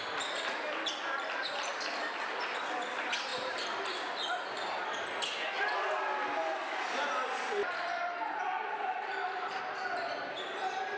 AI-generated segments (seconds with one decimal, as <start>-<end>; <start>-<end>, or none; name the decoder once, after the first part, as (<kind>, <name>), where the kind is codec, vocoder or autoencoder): 1.4-2.8 (vocoder, BigVGAN v2); 7.6-9.6